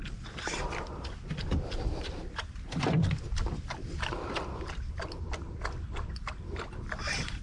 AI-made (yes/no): no